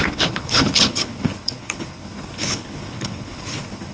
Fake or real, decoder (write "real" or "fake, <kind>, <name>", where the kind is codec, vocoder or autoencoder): fake, codec, HILCodec